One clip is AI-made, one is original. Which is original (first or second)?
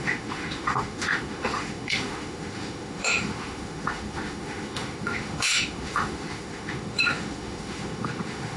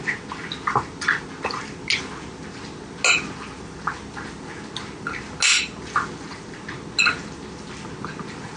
second